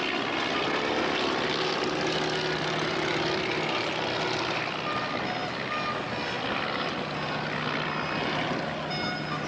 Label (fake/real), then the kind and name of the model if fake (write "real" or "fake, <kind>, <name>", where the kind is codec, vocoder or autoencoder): real